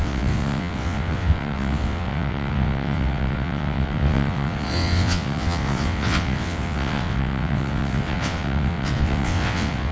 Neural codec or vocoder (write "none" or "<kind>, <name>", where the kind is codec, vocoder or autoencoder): vocoder, WaveNeXt